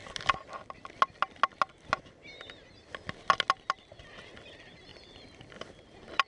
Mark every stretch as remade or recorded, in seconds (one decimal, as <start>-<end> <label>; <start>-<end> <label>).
0.0-4.9 recorded; 4.9-6.3 remade